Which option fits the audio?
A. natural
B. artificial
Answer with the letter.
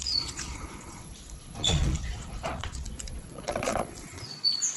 B